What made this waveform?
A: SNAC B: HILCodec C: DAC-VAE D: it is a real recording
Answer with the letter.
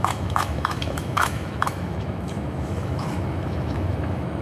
C